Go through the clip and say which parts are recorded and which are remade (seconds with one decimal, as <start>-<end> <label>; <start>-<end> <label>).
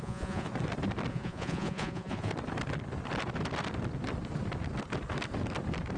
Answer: 0.0-0.5 remade; 0.5-1.1 recorded; 1.1-2.3 remade; 2.3-6.0 recorded